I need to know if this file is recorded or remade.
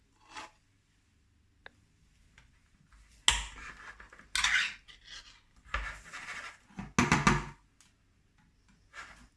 recorded